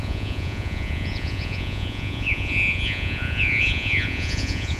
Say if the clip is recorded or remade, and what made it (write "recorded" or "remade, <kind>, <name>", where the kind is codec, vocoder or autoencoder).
remade, vocoder, Vocos